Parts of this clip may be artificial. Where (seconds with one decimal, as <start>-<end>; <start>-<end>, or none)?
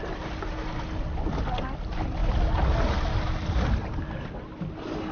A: none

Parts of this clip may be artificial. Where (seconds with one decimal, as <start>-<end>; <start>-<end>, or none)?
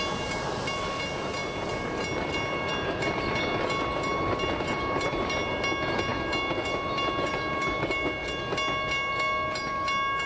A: none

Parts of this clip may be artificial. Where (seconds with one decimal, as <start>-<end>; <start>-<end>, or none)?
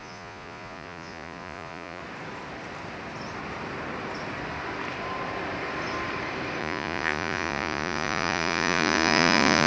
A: 0.0-2.0; 6.6-9.7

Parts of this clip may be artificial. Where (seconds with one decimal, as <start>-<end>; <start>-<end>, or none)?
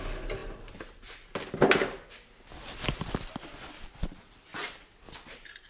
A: none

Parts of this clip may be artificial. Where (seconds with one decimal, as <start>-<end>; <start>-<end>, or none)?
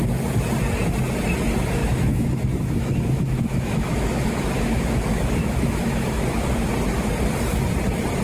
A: 1.8-6.7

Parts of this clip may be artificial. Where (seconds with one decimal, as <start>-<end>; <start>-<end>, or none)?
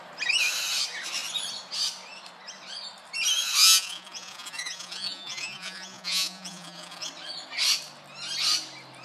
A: 3.6-7.1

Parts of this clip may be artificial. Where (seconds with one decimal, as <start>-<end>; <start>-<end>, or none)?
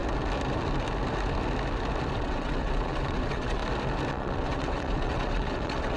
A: 2.1-3.6; 4.1-6.0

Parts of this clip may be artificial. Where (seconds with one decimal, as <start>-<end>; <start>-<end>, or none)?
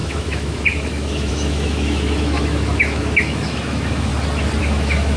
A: 0.0-4.1; 4.6-5.2